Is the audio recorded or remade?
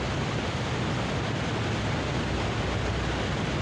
recorded